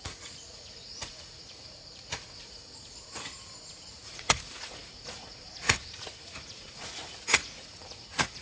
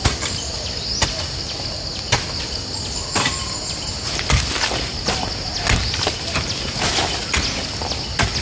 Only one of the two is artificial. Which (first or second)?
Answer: first